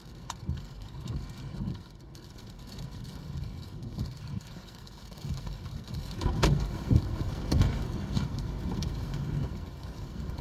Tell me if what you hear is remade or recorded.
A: remade